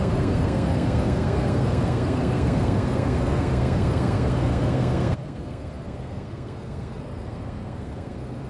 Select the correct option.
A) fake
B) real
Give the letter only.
A